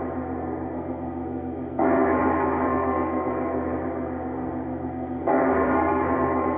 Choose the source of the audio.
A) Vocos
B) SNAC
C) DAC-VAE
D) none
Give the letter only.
B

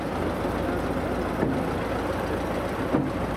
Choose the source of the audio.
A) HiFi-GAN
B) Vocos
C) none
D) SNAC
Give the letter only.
C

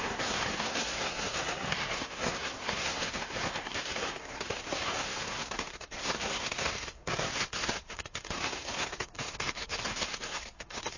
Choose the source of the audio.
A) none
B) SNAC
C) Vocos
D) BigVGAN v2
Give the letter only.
B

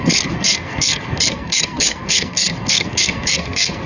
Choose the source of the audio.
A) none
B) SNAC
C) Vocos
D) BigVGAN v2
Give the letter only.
B